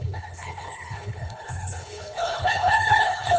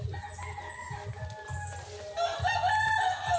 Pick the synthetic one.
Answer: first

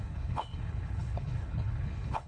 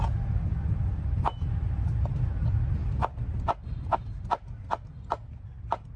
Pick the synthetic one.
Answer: first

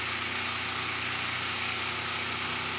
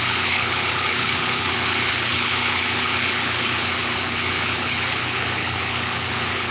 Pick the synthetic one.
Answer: second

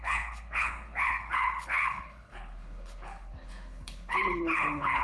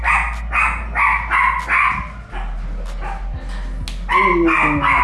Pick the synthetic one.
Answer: first